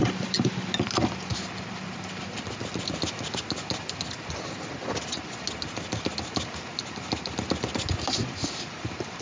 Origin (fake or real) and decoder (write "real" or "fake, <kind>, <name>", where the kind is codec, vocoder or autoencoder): real